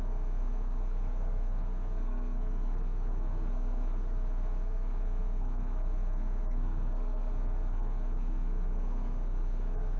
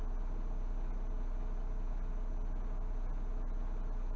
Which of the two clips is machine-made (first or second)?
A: first